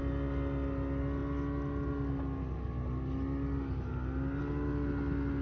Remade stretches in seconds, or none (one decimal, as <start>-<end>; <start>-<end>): none